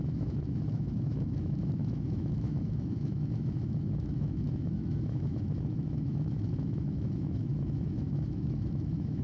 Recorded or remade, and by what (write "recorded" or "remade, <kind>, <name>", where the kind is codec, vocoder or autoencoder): remade, autoencoder, DAC-VAE